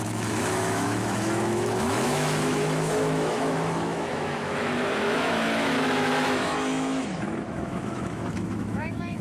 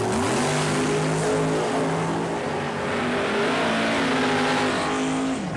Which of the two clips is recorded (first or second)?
second